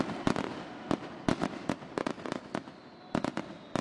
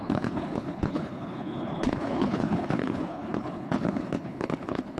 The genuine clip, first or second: first